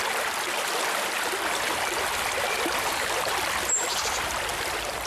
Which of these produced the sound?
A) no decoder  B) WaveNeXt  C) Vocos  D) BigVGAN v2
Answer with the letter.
D